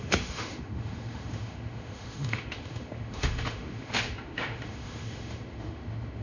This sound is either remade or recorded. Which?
remade